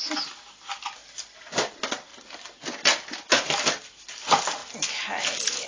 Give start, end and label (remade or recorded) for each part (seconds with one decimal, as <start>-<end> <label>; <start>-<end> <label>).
0.0-5.7 recorded